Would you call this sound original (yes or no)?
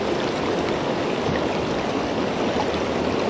yes